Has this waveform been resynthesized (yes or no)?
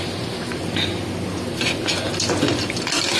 no